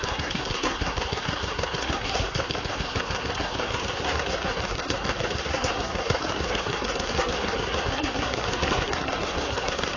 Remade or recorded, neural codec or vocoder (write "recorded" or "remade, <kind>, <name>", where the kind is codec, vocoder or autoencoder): remade, codec, SNAC